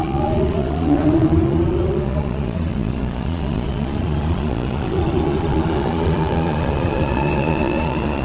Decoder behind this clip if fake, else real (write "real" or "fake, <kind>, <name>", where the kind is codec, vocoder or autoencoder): fake, vocoder, Vocos